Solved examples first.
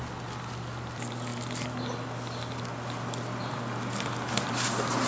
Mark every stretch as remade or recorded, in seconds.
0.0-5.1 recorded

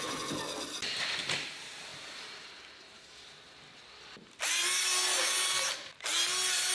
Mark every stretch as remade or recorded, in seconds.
0.0-6.7 recorded

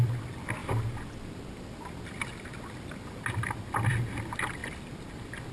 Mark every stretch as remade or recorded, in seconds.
0.0-5.5 recorded

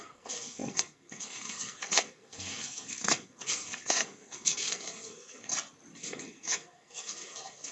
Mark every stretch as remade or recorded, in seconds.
0.0-5.5 remade; 5.5-6.0 recorded; 6.0-7.7 remade

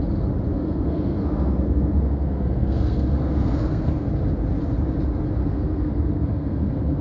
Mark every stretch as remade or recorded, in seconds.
0.0-0.6 recorded; 0.6-4.1 remade; 4.1-5.4 recorded; 5.4-7.0 remade

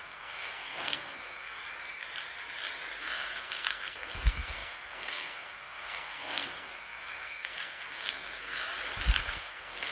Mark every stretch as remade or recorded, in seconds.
0.0-1.6 remade; 1.6-3.0 recorded; 3.0-8.6 remade; 8.6-9.2 recorded; 9.2-9.9 remade